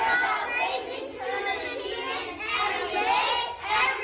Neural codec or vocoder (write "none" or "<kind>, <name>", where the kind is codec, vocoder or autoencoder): none